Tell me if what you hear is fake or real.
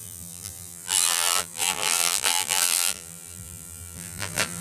fake